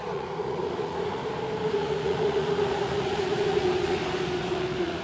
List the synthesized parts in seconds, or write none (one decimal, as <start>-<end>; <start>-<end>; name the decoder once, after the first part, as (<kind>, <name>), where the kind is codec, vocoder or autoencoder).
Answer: 0.0-1.2 (vocoder, Vocos); 1.7-4.0; 4.5-5.0